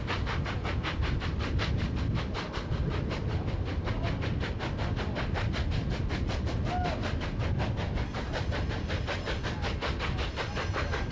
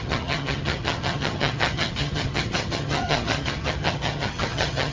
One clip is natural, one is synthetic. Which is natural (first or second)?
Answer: first